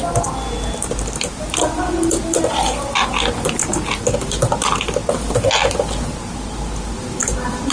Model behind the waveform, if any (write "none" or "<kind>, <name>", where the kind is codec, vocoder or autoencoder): none